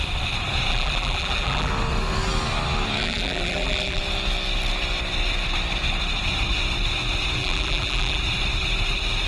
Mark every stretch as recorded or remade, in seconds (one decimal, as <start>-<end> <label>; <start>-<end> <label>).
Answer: 0.0-0.7 recorded; 0.7-1.7 remade; 1.7-3.0 recorded; 3.0-4.0 remade; 4.0-7.4 recorded; 7.4-8.2 remade; 8.2-9.3 recorded